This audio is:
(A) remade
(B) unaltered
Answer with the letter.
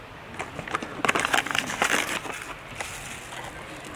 B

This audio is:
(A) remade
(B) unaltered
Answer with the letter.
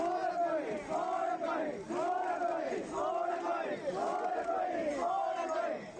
B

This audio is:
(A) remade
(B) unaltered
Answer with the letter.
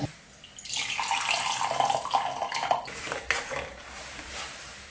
B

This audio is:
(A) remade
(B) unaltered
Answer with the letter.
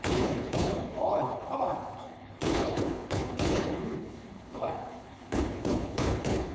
A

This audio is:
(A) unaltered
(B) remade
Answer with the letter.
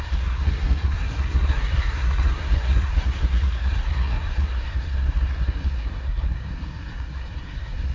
B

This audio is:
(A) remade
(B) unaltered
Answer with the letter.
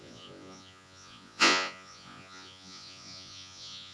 A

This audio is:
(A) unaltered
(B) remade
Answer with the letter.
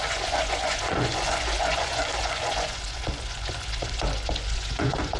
B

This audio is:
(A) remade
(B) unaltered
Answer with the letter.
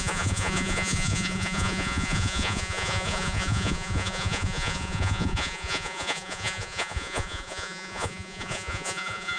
A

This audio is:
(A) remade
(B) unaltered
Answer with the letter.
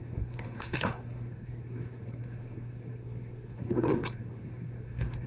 A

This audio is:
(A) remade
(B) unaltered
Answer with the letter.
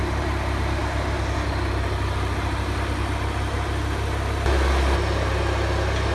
B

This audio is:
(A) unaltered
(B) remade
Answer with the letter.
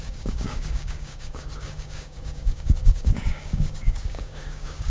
B